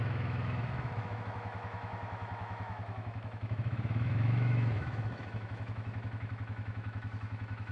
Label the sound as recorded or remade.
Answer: remade